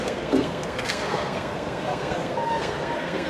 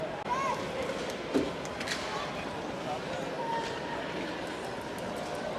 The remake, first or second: first